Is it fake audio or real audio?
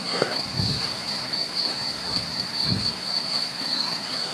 fake